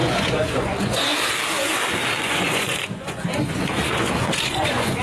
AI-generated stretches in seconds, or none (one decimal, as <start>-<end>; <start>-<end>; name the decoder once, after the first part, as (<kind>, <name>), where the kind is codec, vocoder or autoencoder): 0.0-1.1 (vocoder, Vocos); 2.2-5.0